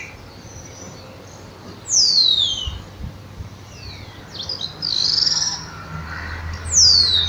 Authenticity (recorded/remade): recorded